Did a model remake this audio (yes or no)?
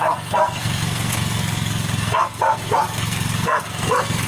yes